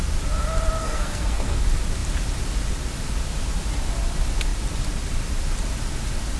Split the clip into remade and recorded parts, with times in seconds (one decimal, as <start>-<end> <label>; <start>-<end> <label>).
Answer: 0.0-0.8 recorded; 0.8-1.6 remade; 1.6-6.4 recorded